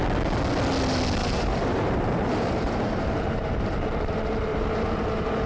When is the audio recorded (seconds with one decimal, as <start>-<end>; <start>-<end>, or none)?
0.0-1.2; 4.1-4.5